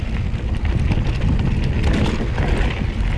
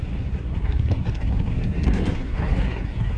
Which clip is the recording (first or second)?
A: first